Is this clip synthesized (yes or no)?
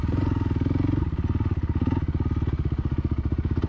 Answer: no